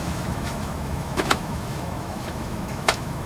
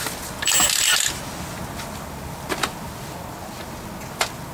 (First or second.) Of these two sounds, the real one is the second